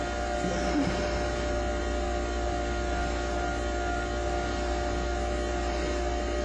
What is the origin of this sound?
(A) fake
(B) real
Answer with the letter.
B